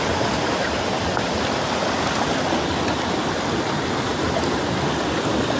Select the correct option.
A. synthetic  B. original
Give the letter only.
B